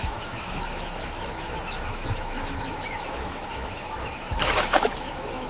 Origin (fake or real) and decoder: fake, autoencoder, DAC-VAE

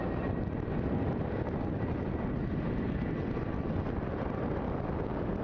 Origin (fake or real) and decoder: real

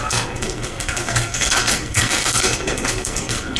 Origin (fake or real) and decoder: fake, codec, SNAC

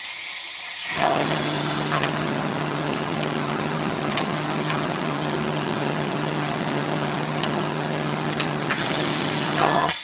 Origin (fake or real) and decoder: fake, vocoder, HiFi-GAN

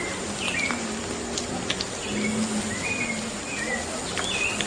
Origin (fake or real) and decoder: real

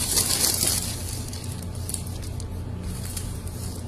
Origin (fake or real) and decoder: fake, vocoder, BigVGAN v2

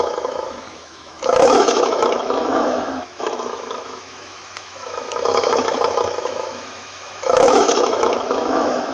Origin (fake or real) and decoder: fake, autoencoder, DAC-VAE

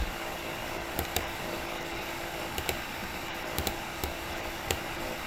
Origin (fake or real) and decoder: fake, codec, DAC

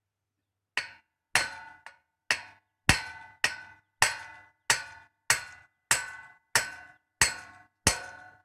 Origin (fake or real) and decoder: real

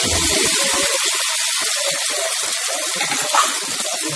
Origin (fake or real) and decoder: real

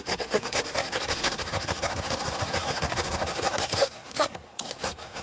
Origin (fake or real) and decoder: fake, codec, SNAC